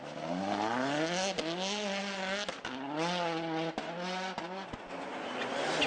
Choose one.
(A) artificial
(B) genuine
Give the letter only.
B